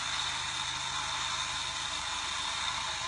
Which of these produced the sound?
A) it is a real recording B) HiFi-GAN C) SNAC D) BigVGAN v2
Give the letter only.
D